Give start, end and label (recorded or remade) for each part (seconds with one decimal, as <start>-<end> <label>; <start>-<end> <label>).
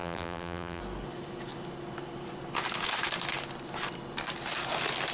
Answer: 0.0-0.8 remade; 0.8-5.1 recorded